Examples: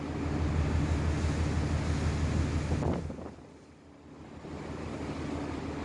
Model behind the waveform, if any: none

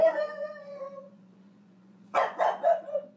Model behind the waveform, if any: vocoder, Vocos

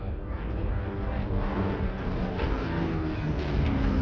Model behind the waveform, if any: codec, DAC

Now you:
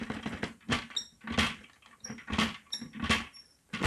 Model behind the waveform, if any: none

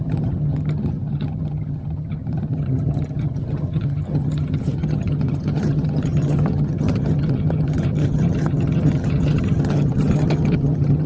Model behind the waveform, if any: vocoder, HiFi-GAN